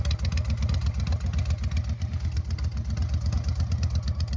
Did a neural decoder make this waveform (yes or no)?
no